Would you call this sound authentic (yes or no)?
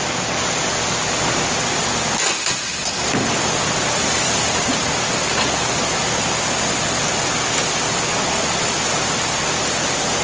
no